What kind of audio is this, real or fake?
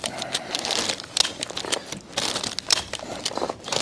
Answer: real